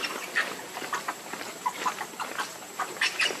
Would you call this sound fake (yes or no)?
yes